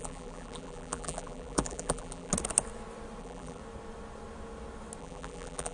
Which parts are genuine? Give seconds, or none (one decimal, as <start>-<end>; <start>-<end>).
2.3-3.2; 3.6-5.0